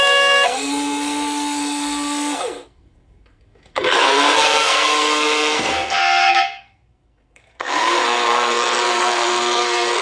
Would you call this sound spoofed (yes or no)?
yes